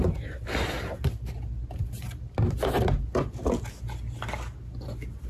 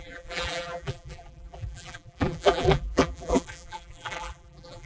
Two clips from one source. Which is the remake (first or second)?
second